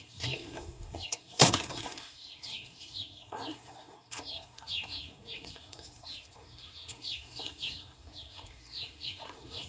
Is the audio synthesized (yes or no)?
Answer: yes